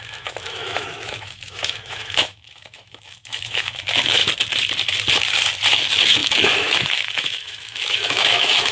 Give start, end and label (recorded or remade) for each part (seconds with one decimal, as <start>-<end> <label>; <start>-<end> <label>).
0.0-4.2 remade; 4.2-5.7 recorded; 5.7-8.7 remade